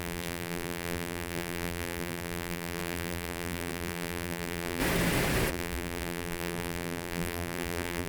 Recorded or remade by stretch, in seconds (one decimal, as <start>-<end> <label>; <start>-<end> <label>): 0.0-4.8 remade; 4.8-5.5 recorded; 5.5-8.1 remade